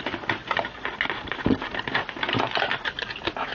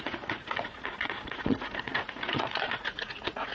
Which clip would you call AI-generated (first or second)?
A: second